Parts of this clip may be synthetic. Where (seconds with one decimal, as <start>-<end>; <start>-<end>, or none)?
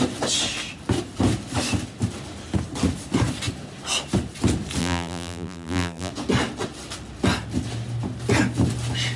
4.8-6.1